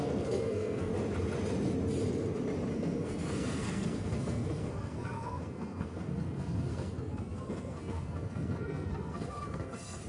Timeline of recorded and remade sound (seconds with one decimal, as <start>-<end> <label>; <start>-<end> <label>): 0.0-0.9 remade; 0.9-2.7 recorded; 2.7-10.1 remade